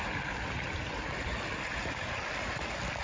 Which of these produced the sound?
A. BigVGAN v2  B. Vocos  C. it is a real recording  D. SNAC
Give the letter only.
C